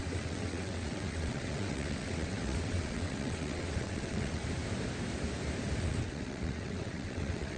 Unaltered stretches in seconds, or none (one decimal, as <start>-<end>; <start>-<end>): 4.4-5.8

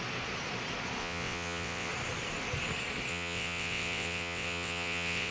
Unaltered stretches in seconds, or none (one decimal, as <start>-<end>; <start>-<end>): 0.0-1.0; 1.9-3.1

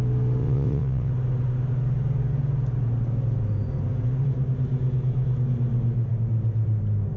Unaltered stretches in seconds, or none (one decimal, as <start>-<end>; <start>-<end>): 0.0-0.4; 1.1-7.2

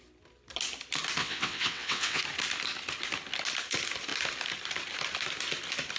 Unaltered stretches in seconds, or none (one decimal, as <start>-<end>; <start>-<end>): 0.0-1.2; 2.2-6.0

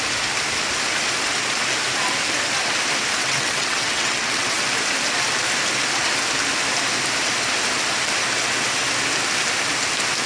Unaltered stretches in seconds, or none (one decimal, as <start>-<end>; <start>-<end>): 0.0-3.2; 4.6-10.3